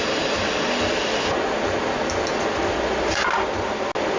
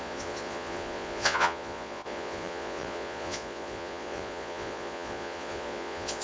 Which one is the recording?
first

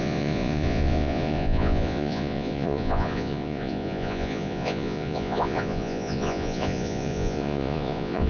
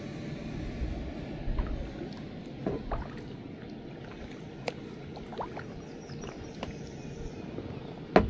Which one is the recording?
second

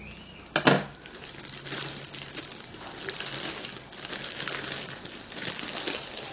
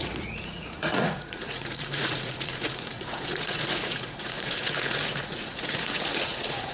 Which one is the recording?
first